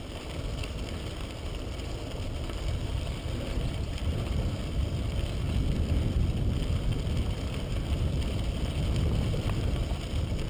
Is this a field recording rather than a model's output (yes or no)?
no